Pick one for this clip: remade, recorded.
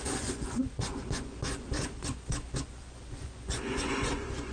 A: remade